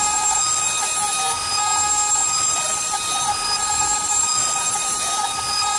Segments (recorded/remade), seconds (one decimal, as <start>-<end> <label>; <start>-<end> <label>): 0.0-2.2 recorded; 2.2-3.8 remade; 3.8-4.4 recorded; 4.4-5.8 remade